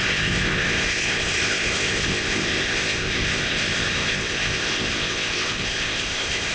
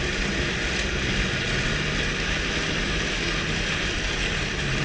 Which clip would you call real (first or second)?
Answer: second